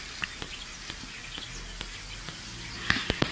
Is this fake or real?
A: real